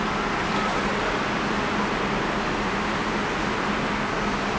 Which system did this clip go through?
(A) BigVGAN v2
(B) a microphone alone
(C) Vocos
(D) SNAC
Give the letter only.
B